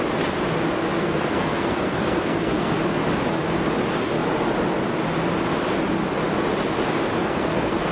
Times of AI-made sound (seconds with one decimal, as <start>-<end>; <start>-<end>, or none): 1.0-2.8; 7.2-7.9